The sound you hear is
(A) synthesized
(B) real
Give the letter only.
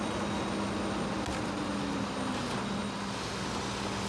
B